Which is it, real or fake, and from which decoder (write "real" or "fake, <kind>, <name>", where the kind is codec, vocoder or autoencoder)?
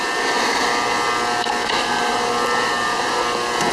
real